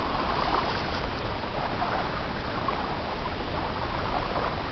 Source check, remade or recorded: recorded